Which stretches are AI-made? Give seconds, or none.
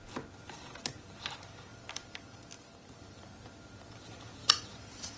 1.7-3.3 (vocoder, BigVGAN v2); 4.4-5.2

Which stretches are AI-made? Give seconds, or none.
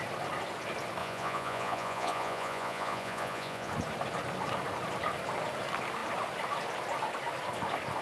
1.0-3.7 (vocoder, Vocos)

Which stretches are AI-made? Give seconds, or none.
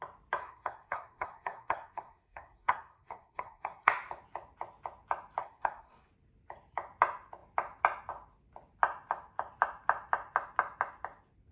0.4-3.9 (codec, SNAC); 5.4-6.1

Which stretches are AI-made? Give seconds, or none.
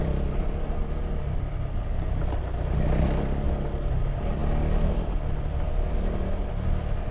none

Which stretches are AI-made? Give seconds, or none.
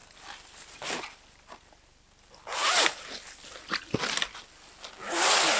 none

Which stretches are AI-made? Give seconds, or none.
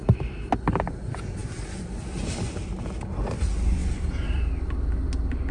0.0-0.5 (vocoder, BigVGAN v2); 3.8-4.4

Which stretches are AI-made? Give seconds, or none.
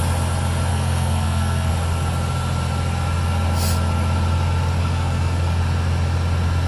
0.7-1.7 (codec, SNAC); 4.8-5.6